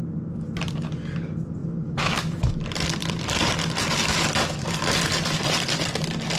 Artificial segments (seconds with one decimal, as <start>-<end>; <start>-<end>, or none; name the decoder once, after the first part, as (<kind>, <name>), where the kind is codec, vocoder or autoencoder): 1.6-2.6 (autoencoder, DAC-VAE)